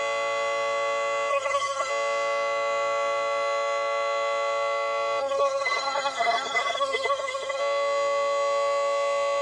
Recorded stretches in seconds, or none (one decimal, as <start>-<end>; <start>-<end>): 0.0-1.3; 1.9-5.2; 7.6-9.4

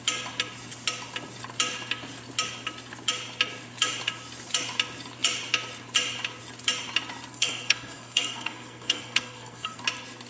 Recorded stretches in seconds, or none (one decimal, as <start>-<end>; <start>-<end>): 0.0-7.3; 9.8-10.3

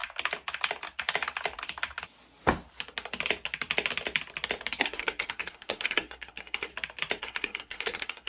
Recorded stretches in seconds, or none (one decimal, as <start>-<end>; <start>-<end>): 0.0-4.8; 6.7-7.2

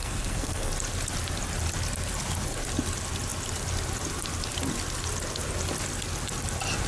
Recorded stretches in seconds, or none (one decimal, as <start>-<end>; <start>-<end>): 0.7-6.9

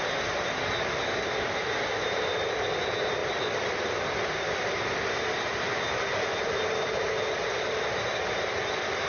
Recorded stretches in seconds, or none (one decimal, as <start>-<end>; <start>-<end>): 0.0-9.1

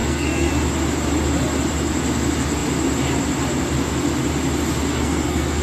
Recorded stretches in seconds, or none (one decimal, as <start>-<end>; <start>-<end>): 0.5-4.9

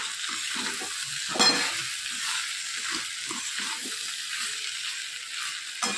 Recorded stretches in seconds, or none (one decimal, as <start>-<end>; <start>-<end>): 0.0-6.0

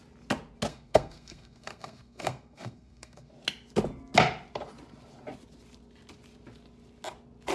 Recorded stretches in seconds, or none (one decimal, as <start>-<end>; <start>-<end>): 0.0-0.7; 3.3-7.5